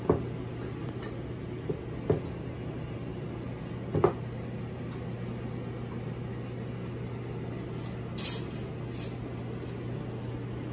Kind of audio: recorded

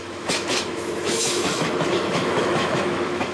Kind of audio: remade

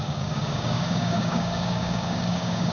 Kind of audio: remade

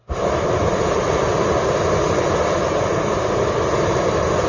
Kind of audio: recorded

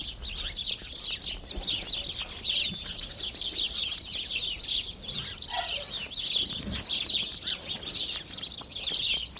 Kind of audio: recorded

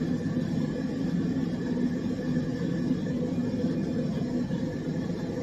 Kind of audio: recorded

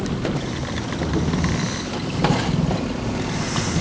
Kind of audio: recorded